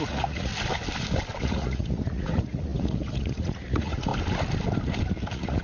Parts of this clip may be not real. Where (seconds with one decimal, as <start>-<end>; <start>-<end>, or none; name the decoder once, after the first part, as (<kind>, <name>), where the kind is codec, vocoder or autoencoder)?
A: 0.0-0.5 (vocoder, Vocos); 1.4-4.1; 5.1-5.6